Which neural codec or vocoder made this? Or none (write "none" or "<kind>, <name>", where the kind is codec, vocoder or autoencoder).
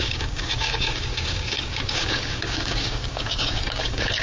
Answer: codec, DAC